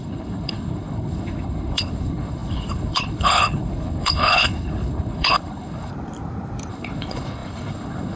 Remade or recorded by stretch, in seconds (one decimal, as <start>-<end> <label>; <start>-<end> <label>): 0.0-5.9 remade; 5.9-6.7 recorded; 6.7-8.2 remade